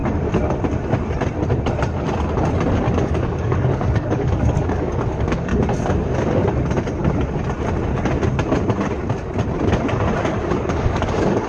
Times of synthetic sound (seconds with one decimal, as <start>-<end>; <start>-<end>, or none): 2.9-5.5; 10.5-11.5